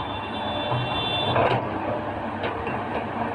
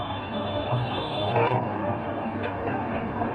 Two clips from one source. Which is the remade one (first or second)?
second